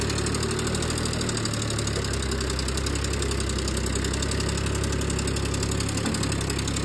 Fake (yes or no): no